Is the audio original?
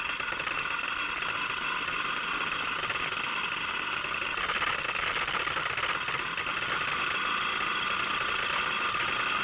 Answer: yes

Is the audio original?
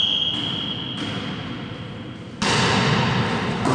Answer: yes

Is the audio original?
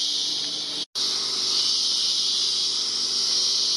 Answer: yes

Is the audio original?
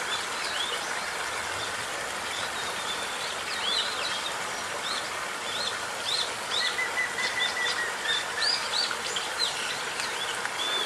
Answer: no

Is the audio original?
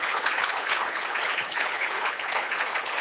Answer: no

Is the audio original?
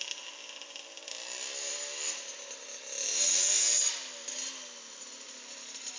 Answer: yes